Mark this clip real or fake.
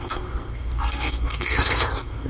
fake